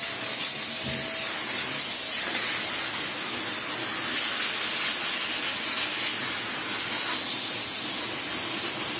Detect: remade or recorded recorded